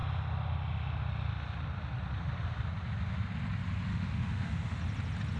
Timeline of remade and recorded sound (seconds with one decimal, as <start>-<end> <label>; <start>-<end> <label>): 0.0-3.9 recorded; 3.9-4.8 remade; 4.8-5.4 recorded

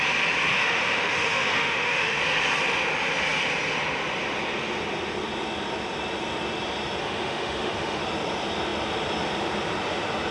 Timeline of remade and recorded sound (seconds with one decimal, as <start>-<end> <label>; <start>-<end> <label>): 0.0-0.5 recorded; 0.5-2.2 remade; 2.2-7.0 recorded; 7.0-8.0 remade; 8.0-10.3 recorded

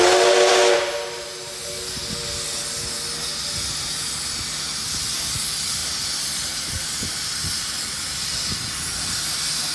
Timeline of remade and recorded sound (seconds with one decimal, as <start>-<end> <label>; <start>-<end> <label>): 0.0-9.7 recorded

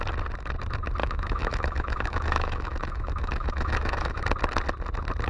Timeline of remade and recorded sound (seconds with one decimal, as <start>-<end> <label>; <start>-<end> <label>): 0.0-1.0 recorded; 1.0-4.2 remade; 4.2-5.3 recorded

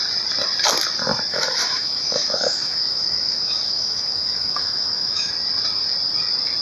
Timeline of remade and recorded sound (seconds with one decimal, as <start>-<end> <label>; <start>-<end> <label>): 0.0-1.3 recorded; 1.3-5.3 remade; 5.3-6.6 recorded

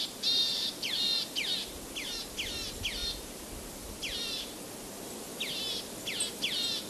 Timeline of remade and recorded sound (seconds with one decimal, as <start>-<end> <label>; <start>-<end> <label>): 0.0-6.9 recorded

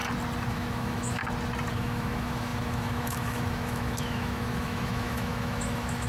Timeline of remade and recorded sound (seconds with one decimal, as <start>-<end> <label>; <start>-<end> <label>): 0.0-0.5 recorded; 0.5-1.2 remade; 1.2-1.7 recorded; 1.7-6.1 remade

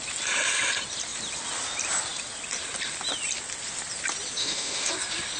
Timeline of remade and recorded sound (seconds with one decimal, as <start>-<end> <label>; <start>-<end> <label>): 0.0-4.4 recorded; 4.4-4.9 remade; 4.9-5.4 recorded